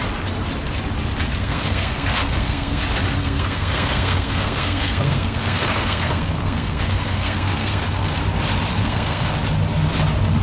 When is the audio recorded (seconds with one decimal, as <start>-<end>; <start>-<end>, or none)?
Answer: 0.0-1.3; 2.8-3.2; 8.2-8.7; 9.3-10.4